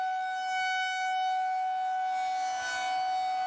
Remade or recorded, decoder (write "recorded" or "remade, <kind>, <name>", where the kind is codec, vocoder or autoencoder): recorded